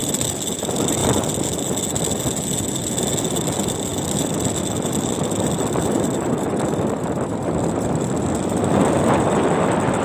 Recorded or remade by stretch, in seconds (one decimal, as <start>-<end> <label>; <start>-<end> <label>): 0.0-10.0 recorded